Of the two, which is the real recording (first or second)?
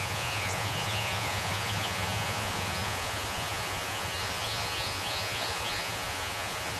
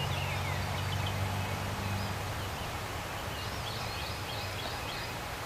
second